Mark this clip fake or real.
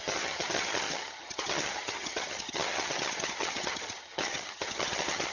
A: fake